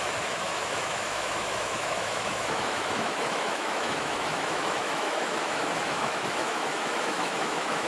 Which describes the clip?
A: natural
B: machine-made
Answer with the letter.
B